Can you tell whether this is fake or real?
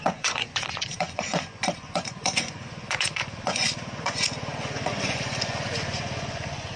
fake